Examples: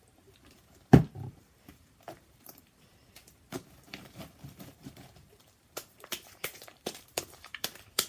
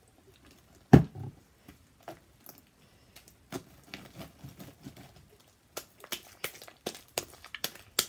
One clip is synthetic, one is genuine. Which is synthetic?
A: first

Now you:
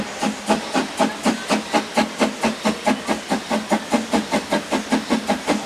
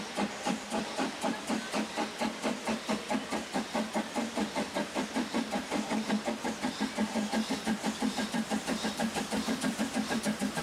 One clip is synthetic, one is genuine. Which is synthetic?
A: second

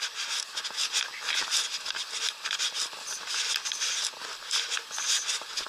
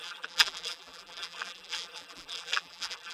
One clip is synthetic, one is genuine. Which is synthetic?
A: second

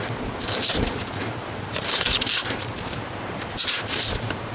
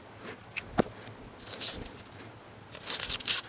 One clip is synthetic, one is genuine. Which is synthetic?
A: first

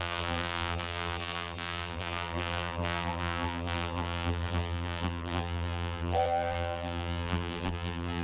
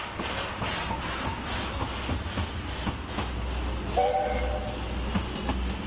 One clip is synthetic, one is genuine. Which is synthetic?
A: first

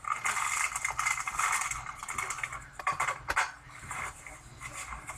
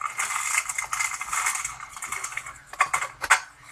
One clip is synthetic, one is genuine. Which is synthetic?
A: first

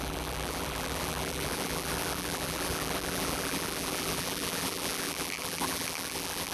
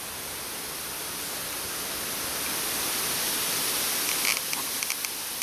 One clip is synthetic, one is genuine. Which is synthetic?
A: first